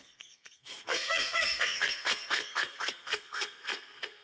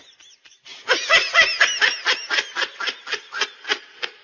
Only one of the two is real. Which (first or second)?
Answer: second